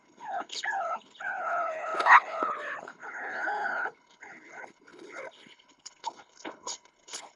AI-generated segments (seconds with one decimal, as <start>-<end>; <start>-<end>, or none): 0.0-7.4